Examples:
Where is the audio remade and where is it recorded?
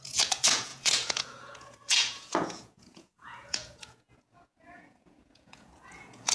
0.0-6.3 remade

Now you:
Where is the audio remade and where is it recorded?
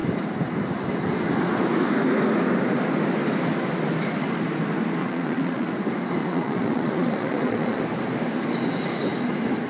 0.0-5.0 recorded; 5.0-5.7 remade; 5.7-6.2 recorded; 6.2-7.8 remade; 7.8-9.7 recorded